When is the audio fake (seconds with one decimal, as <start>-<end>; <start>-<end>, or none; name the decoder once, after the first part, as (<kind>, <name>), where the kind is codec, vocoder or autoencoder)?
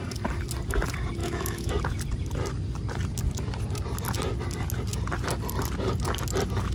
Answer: 1.2-1.7 (autoencoder, DAC-VAE)